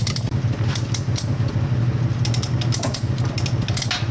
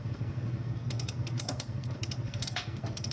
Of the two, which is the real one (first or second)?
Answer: first